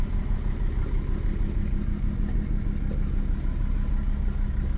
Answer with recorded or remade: recorded